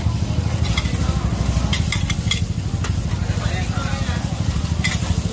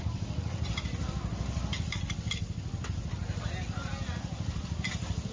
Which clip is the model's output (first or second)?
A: second